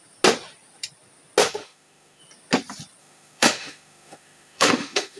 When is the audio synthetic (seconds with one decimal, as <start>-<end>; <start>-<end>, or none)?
1.4-2.2; 3.0-5.2